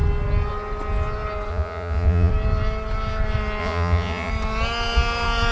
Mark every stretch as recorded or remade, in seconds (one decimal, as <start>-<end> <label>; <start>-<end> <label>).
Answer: 0.0-1.5 recorded; 1.5-2.3 remade; 2.3-3.6 recorded; 3.6-4.3 remade; 4.3-5.5 recorded